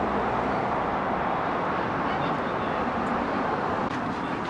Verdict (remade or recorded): recorded